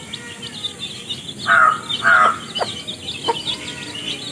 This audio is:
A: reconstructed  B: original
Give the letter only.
B